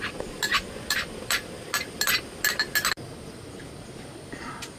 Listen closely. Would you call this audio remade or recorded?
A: recorded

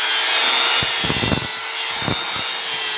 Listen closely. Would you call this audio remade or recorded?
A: recorded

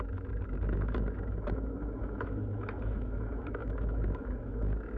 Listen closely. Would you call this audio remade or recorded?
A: remade